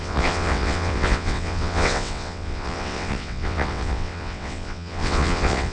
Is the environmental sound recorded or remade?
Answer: remade